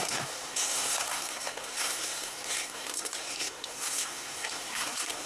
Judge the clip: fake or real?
fake